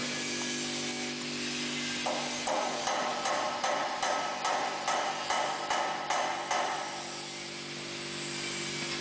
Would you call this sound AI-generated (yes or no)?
no